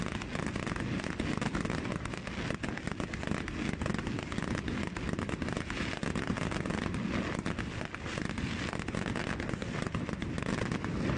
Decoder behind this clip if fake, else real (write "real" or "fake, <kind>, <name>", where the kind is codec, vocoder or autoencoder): real